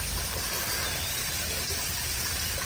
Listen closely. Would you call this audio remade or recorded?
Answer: recorded